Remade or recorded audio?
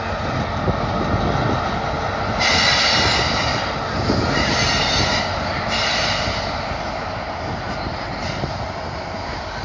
recorded